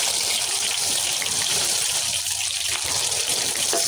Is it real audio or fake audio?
fake